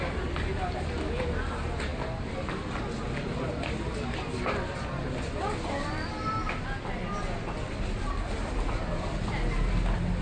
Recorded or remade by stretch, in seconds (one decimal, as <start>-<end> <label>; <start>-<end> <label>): 0.0-10.2 recorded